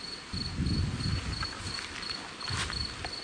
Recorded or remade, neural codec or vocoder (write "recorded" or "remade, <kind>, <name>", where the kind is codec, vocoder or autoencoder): recorded